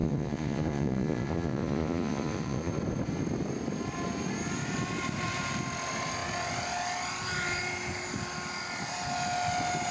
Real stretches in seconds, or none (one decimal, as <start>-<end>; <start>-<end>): 2.7-9.9